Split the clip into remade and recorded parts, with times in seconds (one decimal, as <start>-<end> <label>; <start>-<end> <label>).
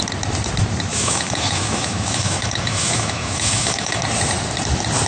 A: 0.0-0.9 recorded; 0.9-4.0 remade; 4.0-5.1 recorded